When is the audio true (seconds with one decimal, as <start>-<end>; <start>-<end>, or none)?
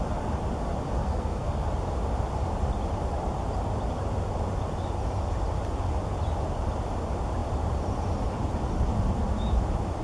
0.0-1.0; 1.7-10.0